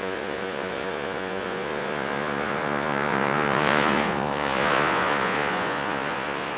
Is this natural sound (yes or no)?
no